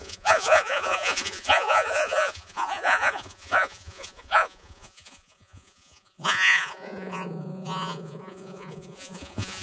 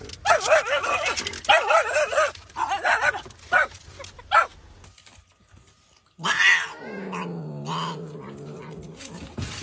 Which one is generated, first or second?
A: first